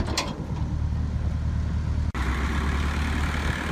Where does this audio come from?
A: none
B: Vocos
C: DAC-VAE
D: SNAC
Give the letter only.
A